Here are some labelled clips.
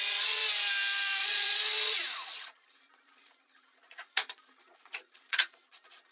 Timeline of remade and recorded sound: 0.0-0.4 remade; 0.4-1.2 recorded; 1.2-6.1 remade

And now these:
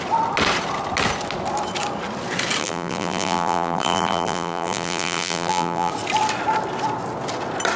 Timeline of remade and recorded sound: 0.0-2.6 recorded; 2.6-5.9 remade; 5.9-7.8 recorded

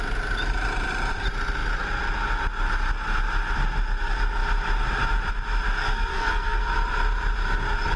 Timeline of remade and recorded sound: 0.0-5.8 recorded; 5.8-6.6 remade; 6.6-8.0 recorded

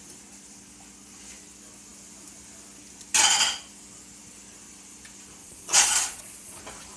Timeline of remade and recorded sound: 0.0-5.4 recorded; 5.4-6.6 remade; 6.6-7.0 recorded